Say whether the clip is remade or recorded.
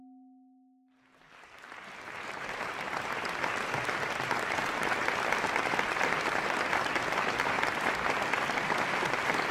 recorded